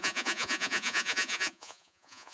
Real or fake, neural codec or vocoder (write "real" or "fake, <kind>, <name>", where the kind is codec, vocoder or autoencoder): fake, vocoder, Vocos